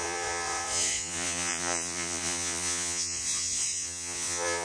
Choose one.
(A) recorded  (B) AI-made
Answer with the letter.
B